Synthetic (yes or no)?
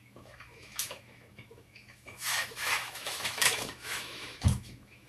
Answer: yes